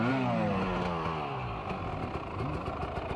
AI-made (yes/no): no